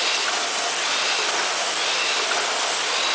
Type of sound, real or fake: real